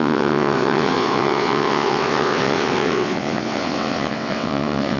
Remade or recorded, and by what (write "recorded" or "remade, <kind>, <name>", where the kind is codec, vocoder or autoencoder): remade, vocoder, WaveNeXt